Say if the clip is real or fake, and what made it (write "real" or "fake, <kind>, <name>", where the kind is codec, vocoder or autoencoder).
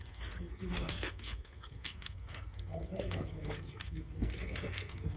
fake, codec, SNAC